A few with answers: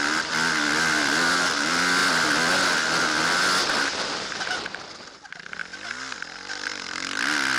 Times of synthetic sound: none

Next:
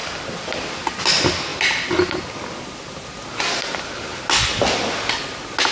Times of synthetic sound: none

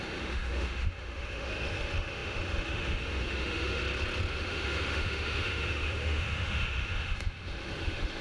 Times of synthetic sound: 0.0-3.8 (autoencoder, DAC-VAE); 4.3-8.2